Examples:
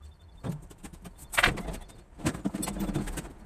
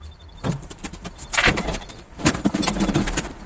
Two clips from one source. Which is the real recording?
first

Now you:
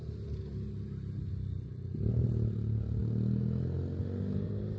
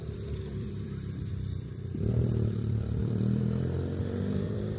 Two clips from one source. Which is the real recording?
first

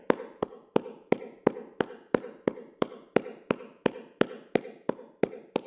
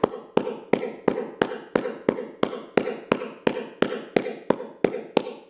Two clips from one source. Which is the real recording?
second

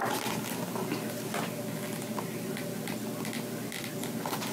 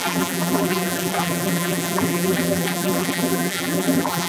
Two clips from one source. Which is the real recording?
first